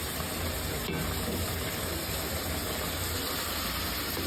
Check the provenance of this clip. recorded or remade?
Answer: recorded